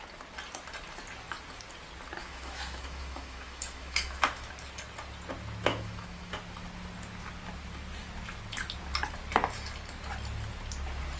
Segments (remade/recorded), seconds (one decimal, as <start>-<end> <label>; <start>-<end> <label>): 0.0-2.2 recorded; 2.2-4.5 remade; 4.5-5.7 recorded; 5.7-6.3 remade; 6.3-11.2 recorded